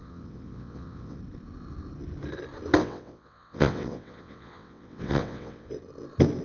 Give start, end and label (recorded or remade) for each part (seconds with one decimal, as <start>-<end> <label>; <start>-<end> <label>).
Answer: 0.0-1.2 remade; 1.2-2.8 recorded; 2.8-5.7 remade; 5.7-6.4 recorded